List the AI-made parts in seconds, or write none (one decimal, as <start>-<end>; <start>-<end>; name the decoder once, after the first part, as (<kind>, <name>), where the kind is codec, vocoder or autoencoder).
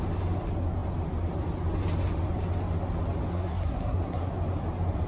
3.3-4.3 (codec, SNAC)